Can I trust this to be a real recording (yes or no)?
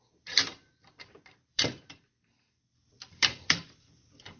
no